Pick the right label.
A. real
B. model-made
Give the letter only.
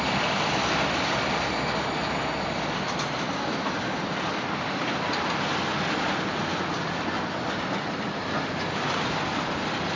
A